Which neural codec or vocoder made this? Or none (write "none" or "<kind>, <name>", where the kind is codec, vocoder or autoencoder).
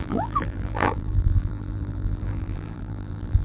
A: vocoder, BigVGAN v2